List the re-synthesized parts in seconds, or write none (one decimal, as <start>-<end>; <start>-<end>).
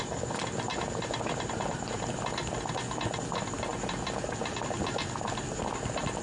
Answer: 0.7-2.7; 3.7-6.2